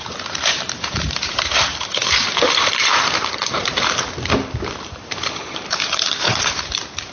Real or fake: fake